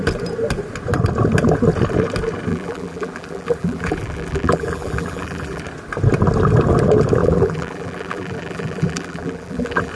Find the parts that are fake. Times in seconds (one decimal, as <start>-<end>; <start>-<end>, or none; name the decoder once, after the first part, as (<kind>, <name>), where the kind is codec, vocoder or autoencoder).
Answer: 2.5-5.6 (vocoder, BigVGAN v2); 7.2-9.9